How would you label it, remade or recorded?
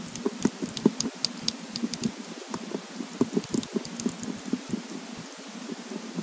recorded